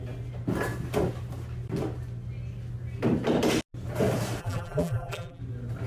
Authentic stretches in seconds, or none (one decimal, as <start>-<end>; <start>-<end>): 0.0-4.4; 5.4-5.9